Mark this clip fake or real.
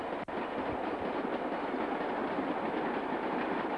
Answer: real